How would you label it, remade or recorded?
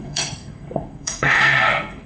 remade